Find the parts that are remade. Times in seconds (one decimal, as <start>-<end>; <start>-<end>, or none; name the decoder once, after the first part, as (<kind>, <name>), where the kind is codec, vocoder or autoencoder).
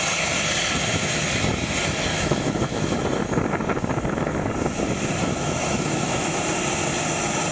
2.1-3.0 (autoencoder, DAC-VAE); 5.2-6.4